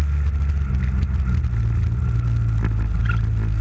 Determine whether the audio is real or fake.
real